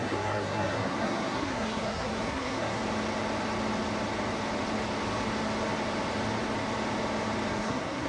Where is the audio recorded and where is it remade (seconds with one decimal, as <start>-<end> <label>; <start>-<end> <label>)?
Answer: 0.0-2.8 remade; 2.8-7.5 recorded; 7.5-8.1 remade